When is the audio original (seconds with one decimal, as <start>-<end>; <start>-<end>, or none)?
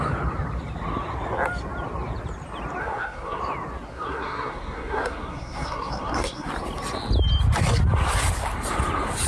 0.0-2.8; 3.4-3.9; 6.5-9.3